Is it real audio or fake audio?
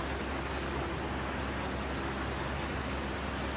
real